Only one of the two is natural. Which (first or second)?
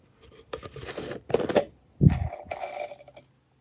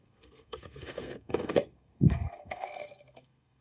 first